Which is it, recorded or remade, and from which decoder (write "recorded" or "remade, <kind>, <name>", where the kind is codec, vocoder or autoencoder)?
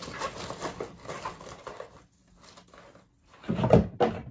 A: recorded